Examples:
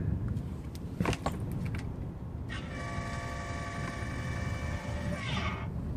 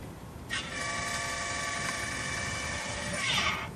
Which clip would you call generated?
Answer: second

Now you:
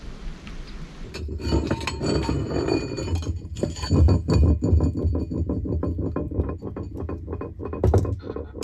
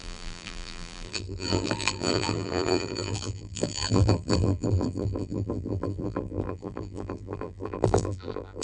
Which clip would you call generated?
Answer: second